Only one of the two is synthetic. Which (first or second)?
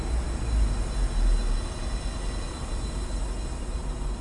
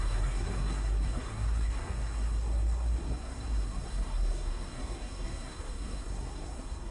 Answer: second